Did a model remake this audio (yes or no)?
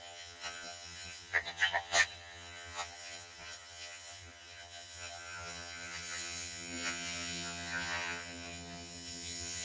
yes